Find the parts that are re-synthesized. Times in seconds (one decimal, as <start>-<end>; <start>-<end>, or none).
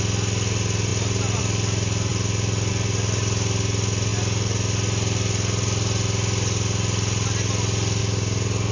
none